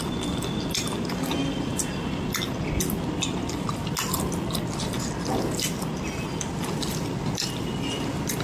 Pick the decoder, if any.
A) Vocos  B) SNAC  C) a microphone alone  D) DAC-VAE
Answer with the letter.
C